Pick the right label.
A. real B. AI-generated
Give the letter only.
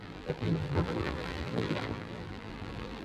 B